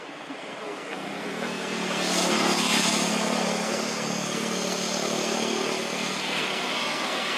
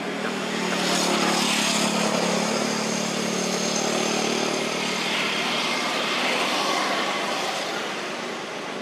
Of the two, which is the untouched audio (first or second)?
second